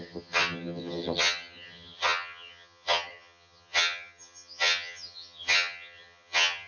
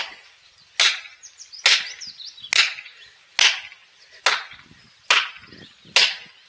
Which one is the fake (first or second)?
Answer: first